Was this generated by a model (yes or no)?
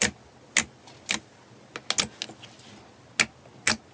no